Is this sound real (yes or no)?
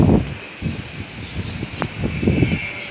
yes